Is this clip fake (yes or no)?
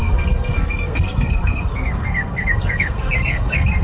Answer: yes